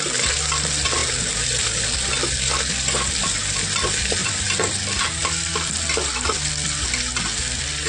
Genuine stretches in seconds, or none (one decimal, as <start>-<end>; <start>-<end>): 0.0-7.9